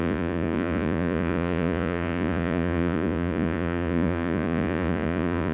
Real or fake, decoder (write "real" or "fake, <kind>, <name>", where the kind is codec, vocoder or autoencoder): fake, vocoder, Vocos